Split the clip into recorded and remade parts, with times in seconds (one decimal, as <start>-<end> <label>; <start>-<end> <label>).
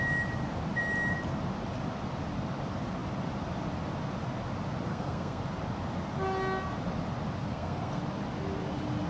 0.0-4.9 recorded; 4.9-5.4 remade; 5.4-7.4 recorded; 7.4-8.0 remade; 8.0-9.1 recorded